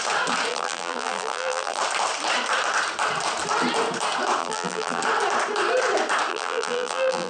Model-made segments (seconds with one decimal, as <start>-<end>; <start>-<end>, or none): 0.5-1.8; 4.4-5.0; 6.3-7.3